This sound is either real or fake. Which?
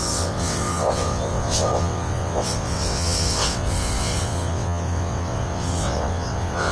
fake